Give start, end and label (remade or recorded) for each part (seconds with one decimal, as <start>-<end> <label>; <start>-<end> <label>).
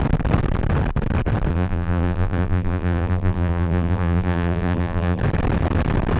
0.0-1.5 recorded; 1.5-5.2 remade; 5.2-6.2 recorded